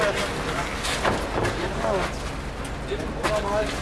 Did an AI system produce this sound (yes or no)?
no